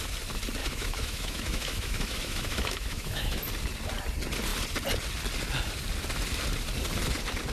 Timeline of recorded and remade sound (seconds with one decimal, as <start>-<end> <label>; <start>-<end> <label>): 0.0-0.6 recorded; 0.6-3.4 remade; 3.4-7.5 recorded